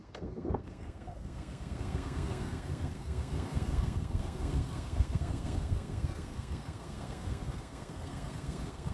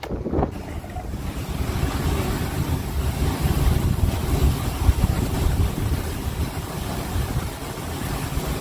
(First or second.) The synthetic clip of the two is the first